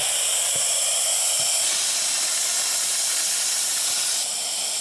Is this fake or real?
real